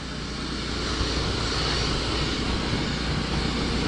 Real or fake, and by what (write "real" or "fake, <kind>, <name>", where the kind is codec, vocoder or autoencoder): real